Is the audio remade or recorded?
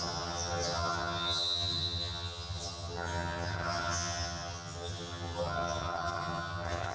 remade